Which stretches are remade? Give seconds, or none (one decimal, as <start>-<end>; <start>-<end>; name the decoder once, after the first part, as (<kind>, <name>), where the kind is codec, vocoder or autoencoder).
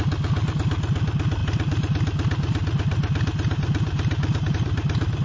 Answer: none